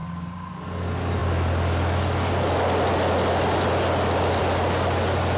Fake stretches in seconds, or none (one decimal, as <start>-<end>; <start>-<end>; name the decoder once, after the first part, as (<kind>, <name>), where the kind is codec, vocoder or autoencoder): 0.0-0.5 (codec, DAC)